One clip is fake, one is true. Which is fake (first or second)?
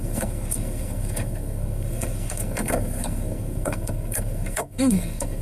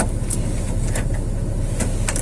first